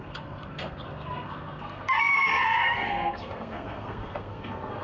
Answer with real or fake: fake